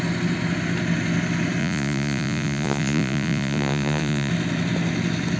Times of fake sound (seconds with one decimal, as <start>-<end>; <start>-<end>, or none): 1.6-4.3